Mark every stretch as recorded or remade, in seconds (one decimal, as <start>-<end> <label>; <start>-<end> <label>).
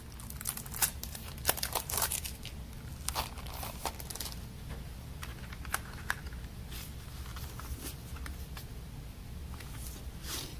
0.0-0.8 recorded; 0.8-2.2 remade; 2.2-10.6 recorded